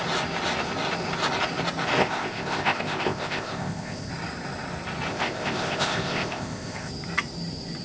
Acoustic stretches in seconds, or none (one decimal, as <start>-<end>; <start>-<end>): 0.0-2.0; 4.1-5.1; 6.9-7.8